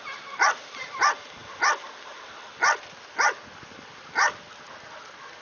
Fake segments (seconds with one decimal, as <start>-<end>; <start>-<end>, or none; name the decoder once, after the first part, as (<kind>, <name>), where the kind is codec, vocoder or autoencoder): none